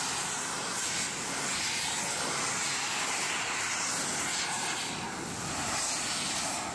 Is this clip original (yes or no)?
yes